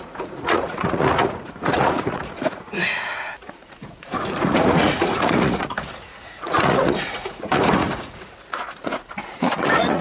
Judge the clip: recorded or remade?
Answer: remade